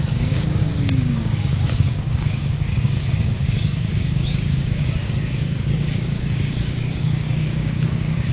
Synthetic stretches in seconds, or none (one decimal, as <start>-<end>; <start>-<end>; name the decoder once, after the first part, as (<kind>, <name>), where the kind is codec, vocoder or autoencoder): 0.0-8.3 (codec, DAC)